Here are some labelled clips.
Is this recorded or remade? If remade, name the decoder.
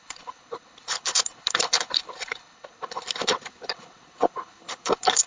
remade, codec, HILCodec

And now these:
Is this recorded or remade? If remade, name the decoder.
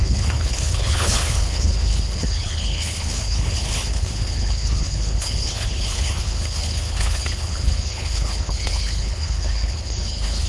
remade, codec, HILCodec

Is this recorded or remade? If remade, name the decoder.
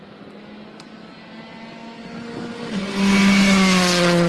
recorded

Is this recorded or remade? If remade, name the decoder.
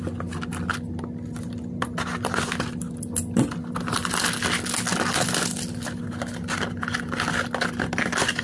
recorded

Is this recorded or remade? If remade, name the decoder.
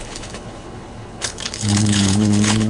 remade, codec, HILCodec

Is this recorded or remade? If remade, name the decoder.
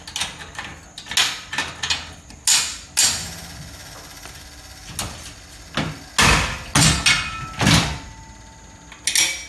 recorded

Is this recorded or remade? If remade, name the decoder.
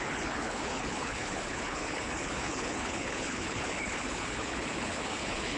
remade, codec, HILCodec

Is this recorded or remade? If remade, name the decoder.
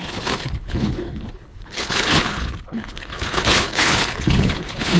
remade, codec, HILCodec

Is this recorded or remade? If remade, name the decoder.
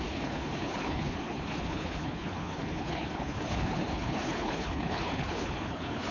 remade, codec, HILCodec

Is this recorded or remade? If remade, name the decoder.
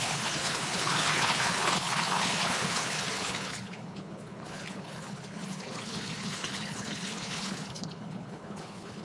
remade, codec, HILCodec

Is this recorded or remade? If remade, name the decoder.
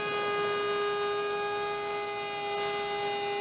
recorded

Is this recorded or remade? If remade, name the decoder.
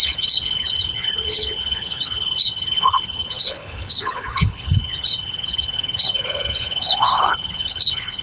remade, codec, HILCodec